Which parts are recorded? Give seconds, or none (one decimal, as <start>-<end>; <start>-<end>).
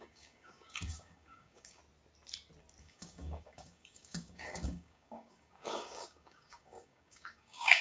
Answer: 1.8-2.8